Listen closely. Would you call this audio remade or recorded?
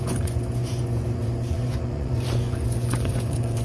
remade